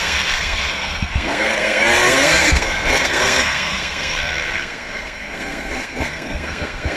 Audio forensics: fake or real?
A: fake